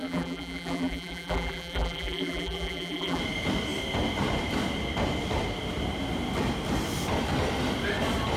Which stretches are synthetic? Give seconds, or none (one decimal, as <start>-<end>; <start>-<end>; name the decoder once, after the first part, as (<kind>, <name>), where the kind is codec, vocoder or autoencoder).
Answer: 0.0-3.2 (vocoder, BigVGAN v2)